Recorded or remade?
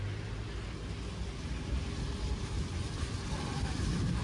recorded